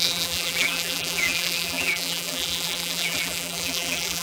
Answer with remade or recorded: remade